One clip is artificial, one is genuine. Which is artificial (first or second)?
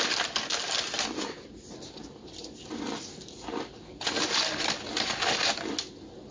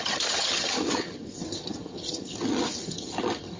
second